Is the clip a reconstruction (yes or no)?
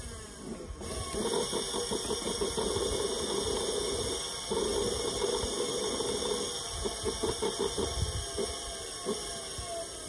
no